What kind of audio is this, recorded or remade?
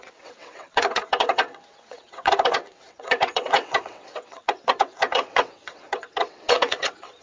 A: remade